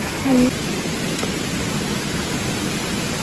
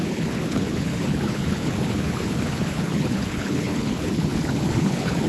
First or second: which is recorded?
first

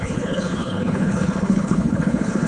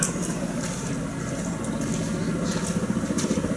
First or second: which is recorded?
second